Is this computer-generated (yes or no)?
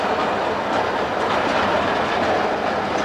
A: no